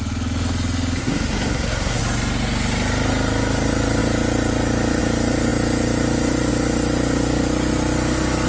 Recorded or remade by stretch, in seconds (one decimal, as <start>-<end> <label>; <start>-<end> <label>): 0.0-1.0 recorded; 1.0-2.0 remade; 2.0-8.5 recorded